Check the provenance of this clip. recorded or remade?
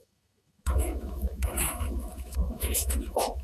remade